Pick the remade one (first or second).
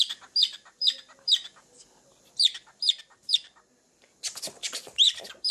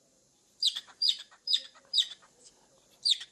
second